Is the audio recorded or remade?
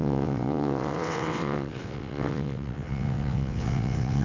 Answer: remade